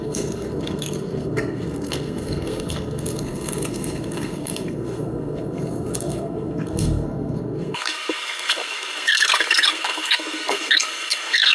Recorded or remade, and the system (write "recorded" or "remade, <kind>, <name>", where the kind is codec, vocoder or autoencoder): remade, codec, SNAC